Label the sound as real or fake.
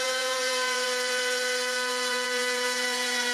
fake